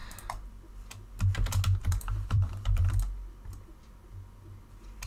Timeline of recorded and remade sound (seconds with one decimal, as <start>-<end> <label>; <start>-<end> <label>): 0.0-1.8 recorded; 1.8-2.9 remade; 2.9-5.1 recorded